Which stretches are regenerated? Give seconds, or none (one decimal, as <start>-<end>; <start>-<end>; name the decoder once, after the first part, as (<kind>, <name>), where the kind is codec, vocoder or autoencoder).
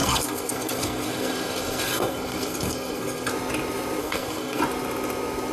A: 0.0-3.3 (codec, SNAC); 4.0-4.6